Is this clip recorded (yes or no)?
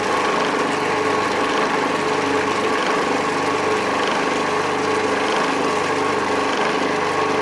yes